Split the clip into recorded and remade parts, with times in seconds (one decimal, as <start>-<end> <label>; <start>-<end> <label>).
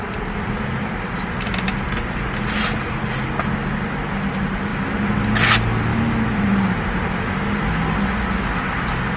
0.0-9.2 recorded